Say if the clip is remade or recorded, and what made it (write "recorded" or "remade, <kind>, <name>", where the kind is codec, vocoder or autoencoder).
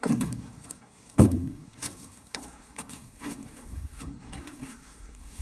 remade, codec, SNAC